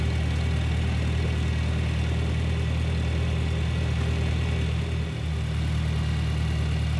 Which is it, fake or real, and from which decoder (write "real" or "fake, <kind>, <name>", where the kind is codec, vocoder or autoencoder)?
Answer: real